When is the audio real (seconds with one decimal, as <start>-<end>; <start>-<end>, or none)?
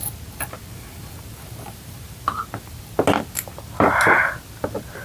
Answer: 0.0-0.7; 2.4-5.0